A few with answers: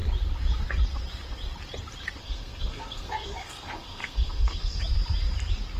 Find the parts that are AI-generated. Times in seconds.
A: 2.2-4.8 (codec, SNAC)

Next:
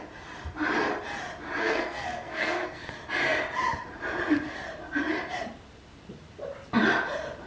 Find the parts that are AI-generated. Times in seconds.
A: 1.6-2.9 (codec, SNAC)

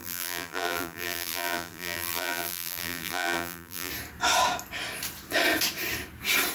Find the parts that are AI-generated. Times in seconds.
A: 0.0-3.9 (vocoder, BigVGAN v2)